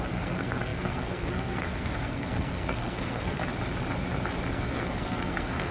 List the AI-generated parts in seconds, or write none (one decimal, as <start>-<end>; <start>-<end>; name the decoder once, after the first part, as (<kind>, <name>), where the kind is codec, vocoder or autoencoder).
0.0-3.4 (codec, SNAC); 4.5-5.7